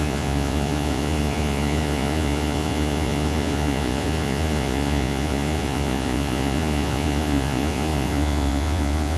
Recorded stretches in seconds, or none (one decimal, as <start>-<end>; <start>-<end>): none